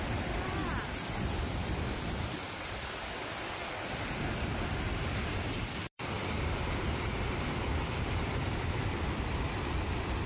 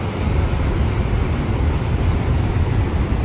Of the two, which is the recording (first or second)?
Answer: second